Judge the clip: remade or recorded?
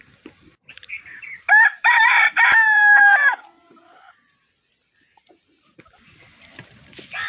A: remade